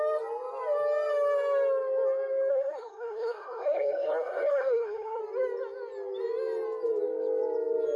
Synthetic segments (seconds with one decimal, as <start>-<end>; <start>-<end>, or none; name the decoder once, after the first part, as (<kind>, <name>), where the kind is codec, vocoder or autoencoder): 2.5-5.2 (codec, SNAC)